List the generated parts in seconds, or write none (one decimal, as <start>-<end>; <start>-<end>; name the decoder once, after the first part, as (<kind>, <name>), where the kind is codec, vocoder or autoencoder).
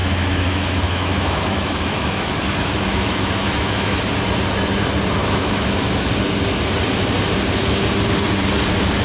0.0-4.0 (autoencoder, DAC-VAE); 5.2-6.1